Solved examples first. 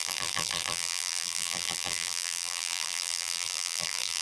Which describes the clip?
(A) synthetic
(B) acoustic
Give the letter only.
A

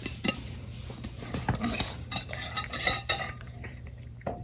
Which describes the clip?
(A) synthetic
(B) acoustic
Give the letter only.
A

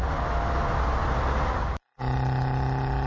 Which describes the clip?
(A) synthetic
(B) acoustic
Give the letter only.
B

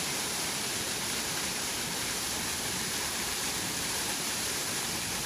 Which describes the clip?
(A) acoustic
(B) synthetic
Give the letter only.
B